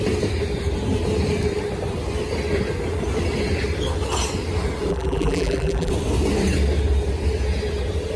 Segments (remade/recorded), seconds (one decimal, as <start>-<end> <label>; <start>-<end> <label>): 0.0-4.9 recorded; 4.9-5.9 remade; 5.9-8.2 recorded